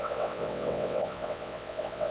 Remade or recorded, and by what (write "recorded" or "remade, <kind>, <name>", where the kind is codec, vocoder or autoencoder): remade, vocoder, WaveNeXt